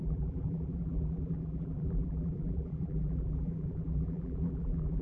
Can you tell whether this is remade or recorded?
remade